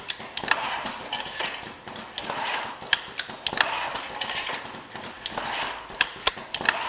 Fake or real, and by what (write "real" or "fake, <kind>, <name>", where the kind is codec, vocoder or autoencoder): real